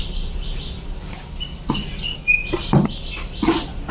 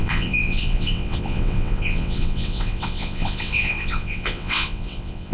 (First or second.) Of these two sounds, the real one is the first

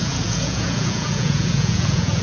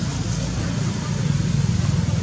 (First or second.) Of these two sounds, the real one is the second